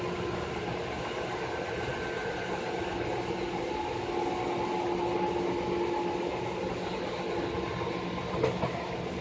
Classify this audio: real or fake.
real